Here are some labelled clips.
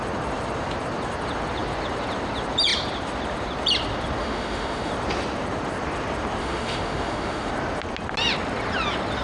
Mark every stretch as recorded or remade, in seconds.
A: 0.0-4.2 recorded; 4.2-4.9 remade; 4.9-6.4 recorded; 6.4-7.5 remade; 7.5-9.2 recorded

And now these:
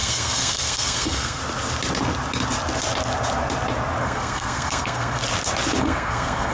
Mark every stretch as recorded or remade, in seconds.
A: 0.0-1.4 remade; 1.4-4.0 recorded; 4.0-5.2 remade; 5.2-5.8 recorded; 5.8-6.5 remade

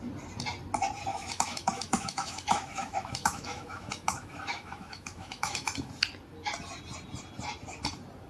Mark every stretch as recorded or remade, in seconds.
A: 0.0-1.1 recorded; 1.1-5.9 remade; 5.9-8.3 recorded

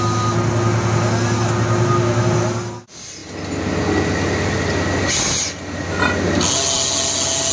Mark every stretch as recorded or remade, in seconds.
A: 0.0-7.5 recorded

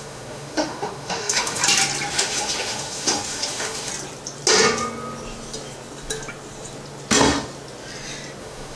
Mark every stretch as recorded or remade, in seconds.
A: 0.0-1.6 remade; 1.6-2.1 recorded; 2.1-3.9 remade; 3.9-8.4 recorded; 8.4-8.8 remade

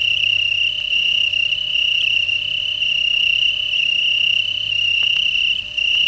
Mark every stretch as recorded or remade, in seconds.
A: 0.0-6.1 recorded

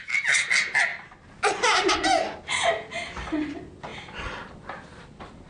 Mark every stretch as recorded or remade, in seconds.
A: 0.0-5.5 recorded

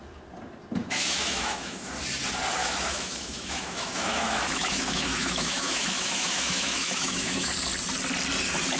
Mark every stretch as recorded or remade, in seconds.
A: 0.0-0.8 recorded; 0.8-1.9 remade; 1.9-2.6 recorded; 2.6-7.5 remade; 7.5-8.8 recorded